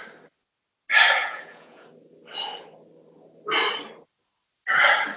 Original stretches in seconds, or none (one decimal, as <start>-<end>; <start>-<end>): 0.0-1.2; 1.9-5.2